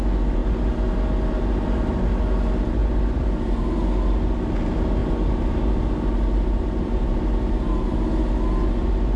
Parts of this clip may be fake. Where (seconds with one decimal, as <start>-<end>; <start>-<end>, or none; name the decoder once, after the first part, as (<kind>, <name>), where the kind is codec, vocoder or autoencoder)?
2.8-3.7 (vocoder, BigVGAN v2); 5.0-7.0